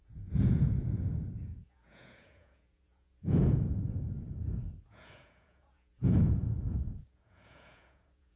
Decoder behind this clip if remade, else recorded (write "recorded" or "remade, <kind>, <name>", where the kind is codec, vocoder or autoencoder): remade, vocoder, Vocos